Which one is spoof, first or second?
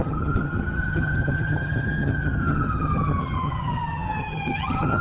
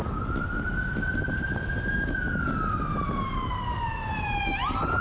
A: first